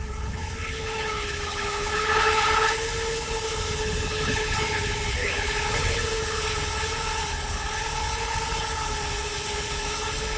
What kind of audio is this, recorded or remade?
remade